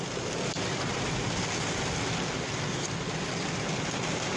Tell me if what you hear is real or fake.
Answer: real